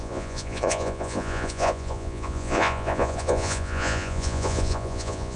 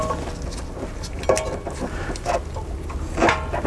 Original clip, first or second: second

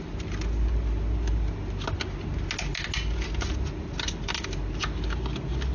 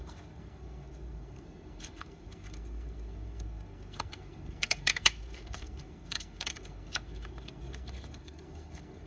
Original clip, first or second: first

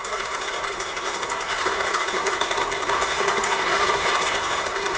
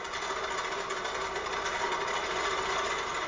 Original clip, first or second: second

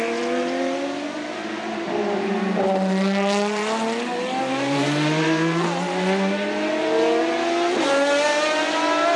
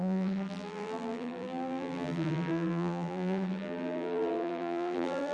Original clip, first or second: first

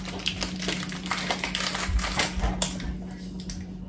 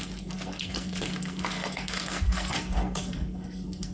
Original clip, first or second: first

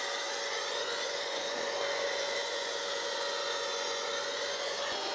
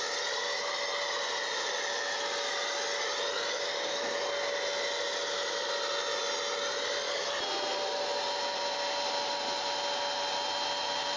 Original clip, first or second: second